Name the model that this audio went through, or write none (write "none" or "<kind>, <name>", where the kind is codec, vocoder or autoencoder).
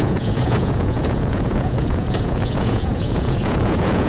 vocoder, Vocos